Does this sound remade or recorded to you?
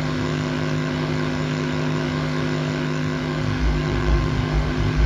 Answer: remade